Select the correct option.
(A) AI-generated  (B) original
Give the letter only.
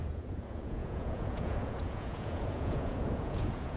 A